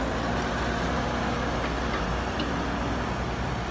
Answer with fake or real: real